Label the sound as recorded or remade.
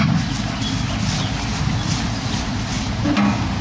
recorded